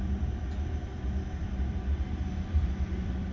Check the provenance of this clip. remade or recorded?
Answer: remade